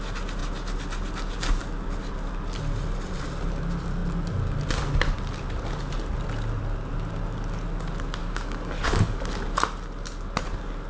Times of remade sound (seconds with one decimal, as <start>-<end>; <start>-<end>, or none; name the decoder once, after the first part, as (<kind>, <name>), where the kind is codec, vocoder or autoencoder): 8.2-9.2 (codec, DAC)